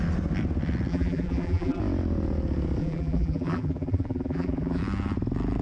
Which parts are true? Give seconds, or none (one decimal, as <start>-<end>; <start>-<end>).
0.0-0.9; 1.8-2.8; 4.8-5.6